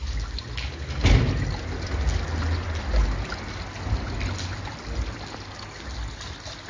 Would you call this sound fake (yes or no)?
no